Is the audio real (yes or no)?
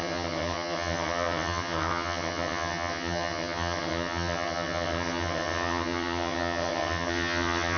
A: no